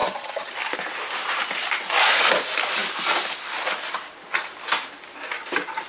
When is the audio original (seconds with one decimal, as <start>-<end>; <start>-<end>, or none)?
0.5-5.9